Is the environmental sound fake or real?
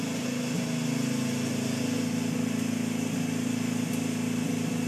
real